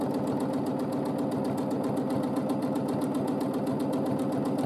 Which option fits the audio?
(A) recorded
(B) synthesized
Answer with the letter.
A